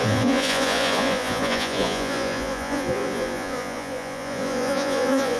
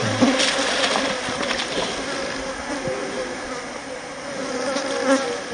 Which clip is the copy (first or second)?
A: first